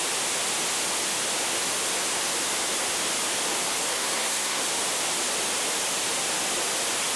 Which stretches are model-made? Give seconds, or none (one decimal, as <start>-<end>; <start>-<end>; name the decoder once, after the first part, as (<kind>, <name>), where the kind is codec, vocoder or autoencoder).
3.9-4.6 (codec, SNAC)